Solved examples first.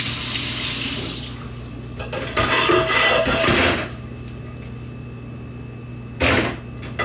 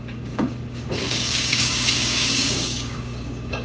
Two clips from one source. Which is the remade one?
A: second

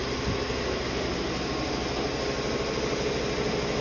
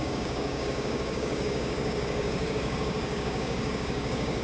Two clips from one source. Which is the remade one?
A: second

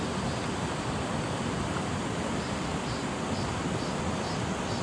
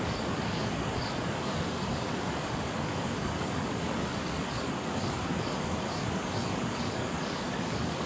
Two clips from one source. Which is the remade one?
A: second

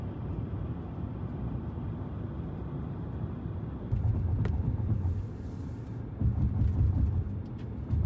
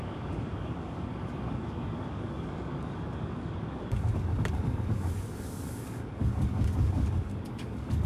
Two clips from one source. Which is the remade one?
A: second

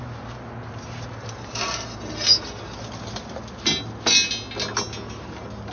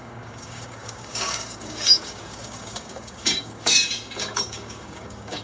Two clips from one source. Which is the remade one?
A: second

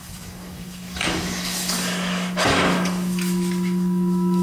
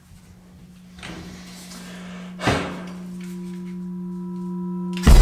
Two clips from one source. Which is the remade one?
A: first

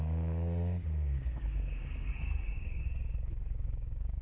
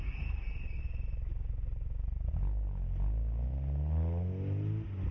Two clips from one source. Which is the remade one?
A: first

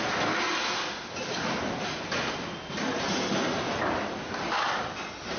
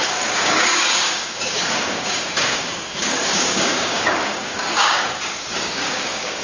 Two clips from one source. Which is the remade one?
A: second